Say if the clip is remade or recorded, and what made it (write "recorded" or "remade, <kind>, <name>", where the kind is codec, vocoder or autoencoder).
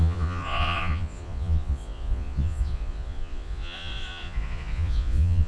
remade, vocoder, Vocos